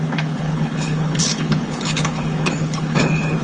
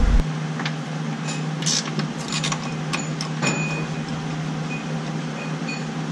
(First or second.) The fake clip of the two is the first